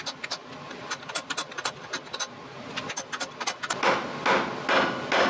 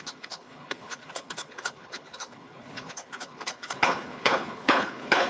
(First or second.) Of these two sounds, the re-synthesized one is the second